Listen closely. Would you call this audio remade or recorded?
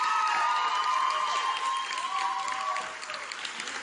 recorded